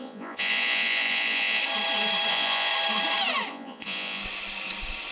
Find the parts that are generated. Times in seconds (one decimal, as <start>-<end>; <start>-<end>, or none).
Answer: 0.0-1.6; 2.3-2.7; 3.5-4.2